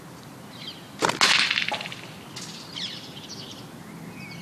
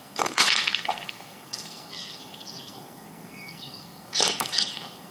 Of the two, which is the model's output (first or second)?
second